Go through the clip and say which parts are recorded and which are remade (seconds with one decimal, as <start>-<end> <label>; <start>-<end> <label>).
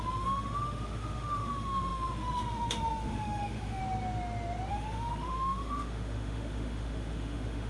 0.0-3.8 remade; 3.8-4.7 recorded; 4.7-7.7 remade